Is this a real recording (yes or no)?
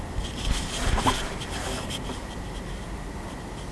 yes